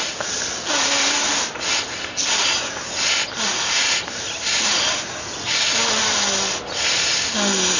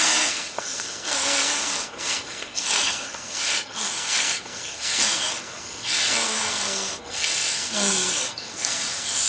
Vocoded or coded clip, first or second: second